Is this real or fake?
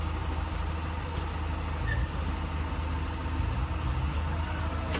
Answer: real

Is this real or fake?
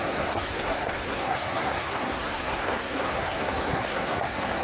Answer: fake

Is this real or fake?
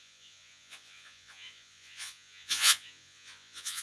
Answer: fake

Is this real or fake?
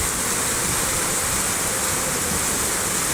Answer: real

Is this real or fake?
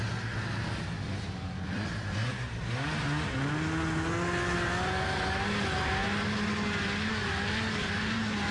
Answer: real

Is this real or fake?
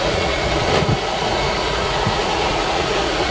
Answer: fake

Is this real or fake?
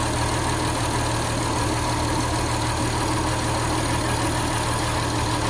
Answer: real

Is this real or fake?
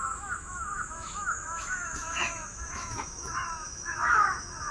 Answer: fake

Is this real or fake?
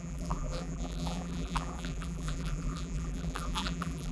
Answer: fake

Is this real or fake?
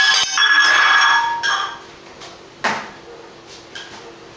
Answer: real